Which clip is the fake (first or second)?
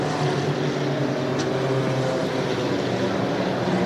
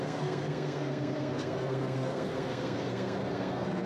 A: second